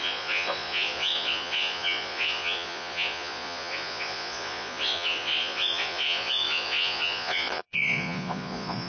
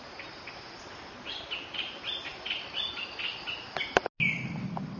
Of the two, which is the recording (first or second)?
second